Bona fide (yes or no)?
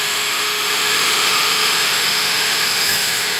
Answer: no